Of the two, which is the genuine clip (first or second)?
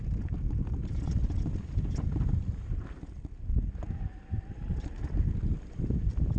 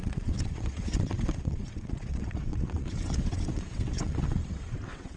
first